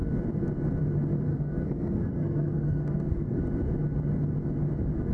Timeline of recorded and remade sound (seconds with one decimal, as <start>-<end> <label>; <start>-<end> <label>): 0.0-1.3 recorded; 1.3-3.4 remade; 3.4-5.1 recorded